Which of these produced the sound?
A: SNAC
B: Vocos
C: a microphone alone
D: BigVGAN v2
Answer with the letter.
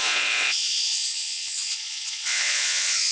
B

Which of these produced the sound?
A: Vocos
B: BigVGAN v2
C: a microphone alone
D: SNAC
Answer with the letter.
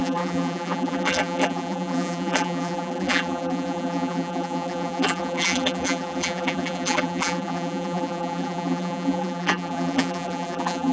B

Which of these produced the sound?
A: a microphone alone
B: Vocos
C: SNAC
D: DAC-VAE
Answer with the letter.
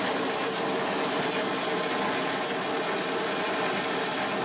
A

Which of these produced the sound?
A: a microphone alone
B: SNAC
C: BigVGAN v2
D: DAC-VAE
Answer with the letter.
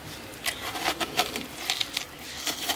A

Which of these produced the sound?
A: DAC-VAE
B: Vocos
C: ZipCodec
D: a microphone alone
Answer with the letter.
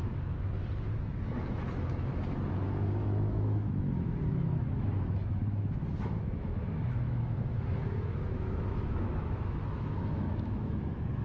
A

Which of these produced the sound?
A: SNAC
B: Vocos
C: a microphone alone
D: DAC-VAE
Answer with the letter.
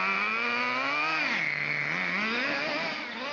C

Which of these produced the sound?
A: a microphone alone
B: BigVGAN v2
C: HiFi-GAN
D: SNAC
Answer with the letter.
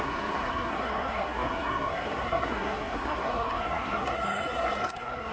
D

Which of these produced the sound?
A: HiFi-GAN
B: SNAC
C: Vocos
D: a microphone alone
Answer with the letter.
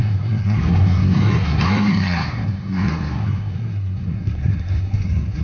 B